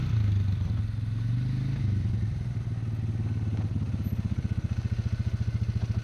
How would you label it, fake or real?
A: real